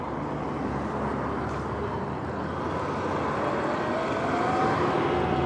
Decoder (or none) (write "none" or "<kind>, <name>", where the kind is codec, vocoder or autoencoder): none